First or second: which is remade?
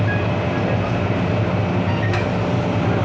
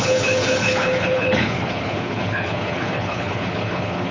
second